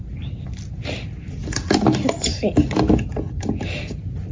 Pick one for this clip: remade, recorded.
recorded